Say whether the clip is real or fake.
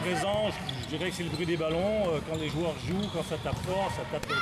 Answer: real